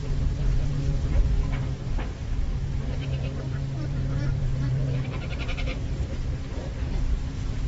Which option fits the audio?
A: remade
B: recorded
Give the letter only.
A